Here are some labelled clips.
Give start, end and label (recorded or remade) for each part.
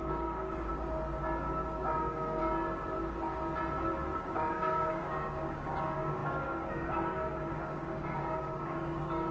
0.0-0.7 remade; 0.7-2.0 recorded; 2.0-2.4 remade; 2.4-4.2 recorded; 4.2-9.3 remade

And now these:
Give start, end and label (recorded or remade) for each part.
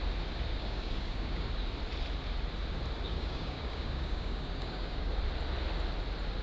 0.0-0.5 recorded; 0.5-1.5 remade; 1.5-3.1 recorded; 3.1-5.1 remade; 5.1-6.4 recorded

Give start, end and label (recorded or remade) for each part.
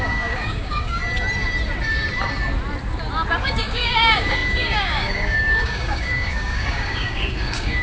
0.0-1.0 remade; 1.0-3.4 recorded; 3.4-7.8 remade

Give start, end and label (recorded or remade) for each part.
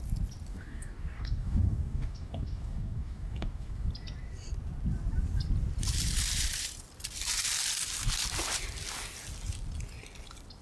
0.0-0.5 recorded; 0.5-3.9 remade; 3.9-10.6 recorded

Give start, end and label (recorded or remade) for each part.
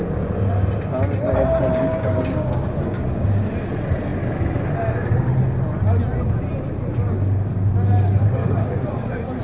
0.0-1.7 recorded; 1.7-3.5 remade; 3.5-8.4 recorded; 8.4-9.4 remade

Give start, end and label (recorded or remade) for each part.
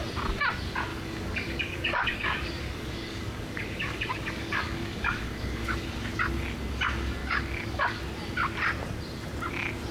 0.0-0.9 recorded; 0.9-5.9 remade; 5.9-7.2 recorded; 7.2-8.0 remade; 8.0-9.9 recorded